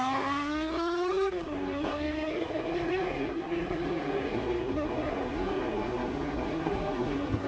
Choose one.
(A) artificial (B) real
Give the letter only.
A